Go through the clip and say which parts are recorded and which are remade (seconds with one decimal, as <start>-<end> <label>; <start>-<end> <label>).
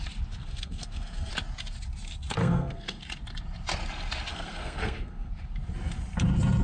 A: 0.0-0.4 recorded; 0.4-1.3 remade; 1.3-2.4 recorded; 2.4-3.0 remade; 3.0-4.3 recorded; 4.3-5.3 remade; 5.3-6.6 recorded